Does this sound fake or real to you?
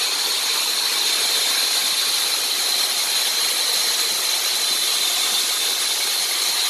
real